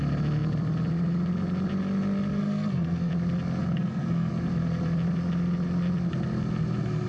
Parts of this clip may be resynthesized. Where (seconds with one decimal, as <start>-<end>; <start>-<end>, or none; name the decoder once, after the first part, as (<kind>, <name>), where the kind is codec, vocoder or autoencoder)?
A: 2.3-3.1 (codec, SNAC); 3.6-4.3

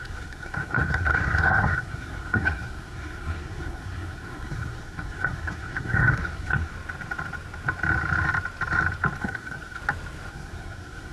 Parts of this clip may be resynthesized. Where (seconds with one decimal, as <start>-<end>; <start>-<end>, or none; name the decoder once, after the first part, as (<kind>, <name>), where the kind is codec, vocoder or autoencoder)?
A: 0.0-6.7 (codec, SNAC); 9.2-9.8; 10.3-11.1